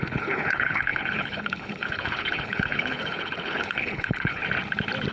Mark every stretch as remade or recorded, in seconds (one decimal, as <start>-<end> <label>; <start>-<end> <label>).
0.0-4.4 remade; 4.4-5.1 recorded